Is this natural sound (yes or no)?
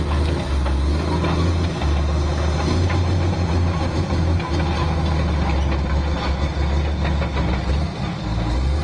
yes